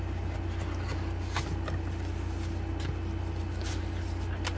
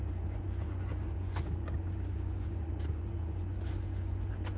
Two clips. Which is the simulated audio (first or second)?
second